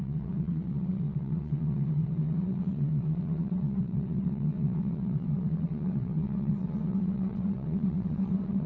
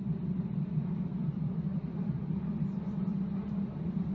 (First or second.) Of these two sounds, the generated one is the first